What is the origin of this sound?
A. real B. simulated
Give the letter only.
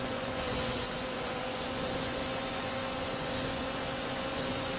B